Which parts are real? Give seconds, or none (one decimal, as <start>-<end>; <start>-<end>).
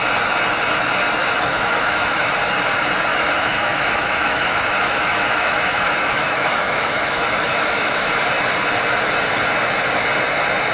0.0-1.2; 2.3-3.1; 8.1-10.7